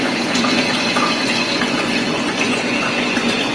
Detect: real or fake fake